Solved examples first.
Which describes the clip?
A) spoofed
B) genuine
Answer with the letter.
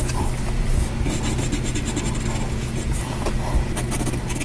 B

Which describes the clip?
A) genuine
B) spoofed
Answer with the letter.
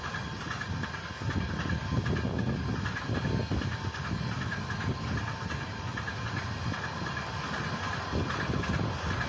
A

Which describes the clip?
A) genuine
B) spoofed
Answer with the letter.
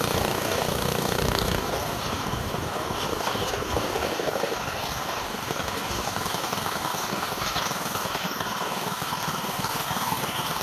B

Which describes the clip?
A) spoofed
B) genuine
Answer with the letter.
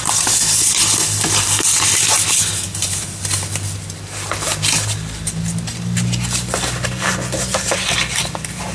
A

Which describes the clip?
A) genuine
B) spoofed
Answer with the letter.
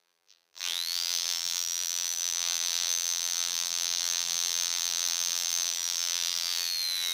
B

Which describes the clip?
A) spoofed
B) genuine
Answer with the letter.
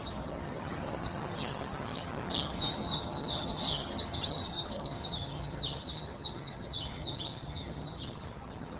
A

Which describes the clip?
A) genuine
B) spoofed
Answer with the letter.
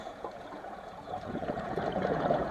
B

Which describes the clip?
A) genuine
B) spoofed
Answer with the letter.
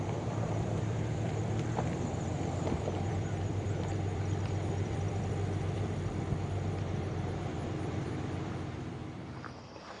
B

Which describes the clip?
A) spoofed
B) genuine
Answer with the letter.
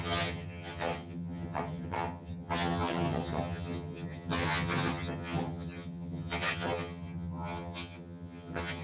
A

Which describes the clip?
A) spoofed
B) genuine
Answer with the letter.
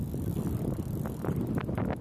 B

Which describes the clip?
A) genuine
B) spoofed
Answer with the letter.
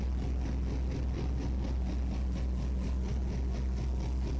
A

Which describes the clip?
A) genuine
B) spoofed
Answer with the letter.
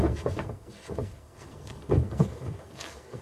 B